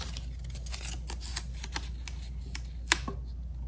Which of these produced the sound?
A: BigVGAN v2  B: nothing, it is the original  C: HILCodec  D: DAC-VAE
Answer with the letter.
B